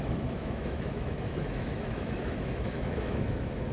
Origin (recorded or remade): remade